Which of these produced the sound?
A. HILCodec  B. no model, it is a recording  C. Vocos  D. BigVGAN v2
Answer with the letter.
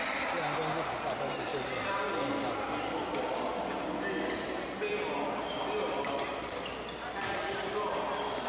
B